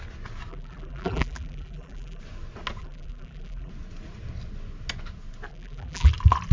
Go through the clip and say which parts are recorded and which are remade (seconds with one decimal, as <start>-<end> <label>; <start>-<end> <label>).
0.0-0.5 recorded; 0.5-2.2 remade; 2.2-2.8 recorded; 2.8-3.7 remade; 3.7-5.5 recorded; 5.5-6.1 remade; 6.1-6.5 recorded